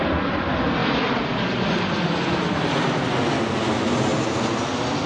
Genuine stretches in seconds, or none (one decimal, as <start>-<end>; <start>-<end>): 0.0-5.1